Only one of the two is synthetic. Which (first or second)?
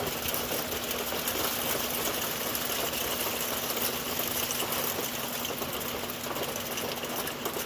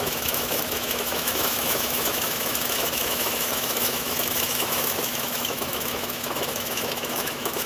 second